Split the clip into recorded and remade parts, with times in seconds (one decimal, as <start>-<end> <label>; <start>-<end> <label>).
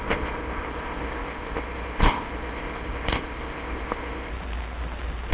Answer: 0.0-4.3 remade; 4.3-5.3 recorded